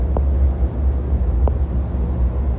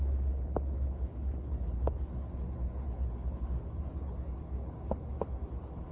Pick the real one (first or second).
first